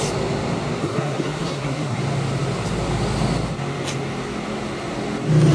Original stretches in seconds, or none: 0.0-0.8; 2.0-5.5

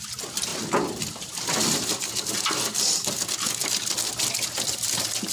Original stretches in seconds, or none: 0.0-5.3

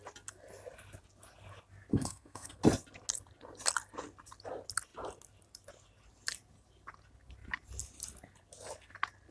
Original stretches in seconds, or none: 0.0-1.9; 2.6-9.3

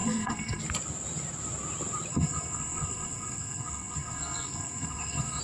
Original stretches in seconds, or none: 0.6-2.1

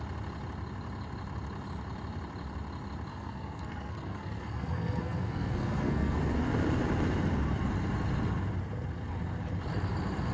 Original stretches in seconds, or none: 0.0-3.1; 6.2-10.3

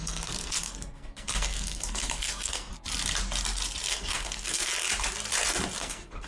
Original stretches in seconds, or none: 2.7-3.9; 4.7-5.8

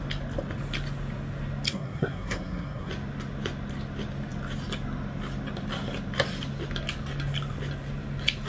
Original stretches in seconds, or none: 0.0-1.7; 2.9-8.5

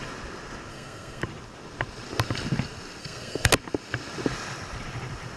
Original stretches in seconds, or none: 0.0-0.7; 1.2-3.0; 3.5-5.4